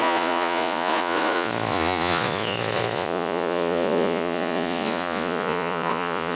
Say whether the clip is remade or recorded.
remade